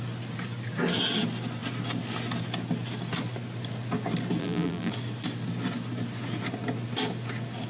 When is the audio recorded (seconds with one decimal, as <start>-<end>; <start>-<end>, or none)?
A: 0.0-4.4; 4.9-7.7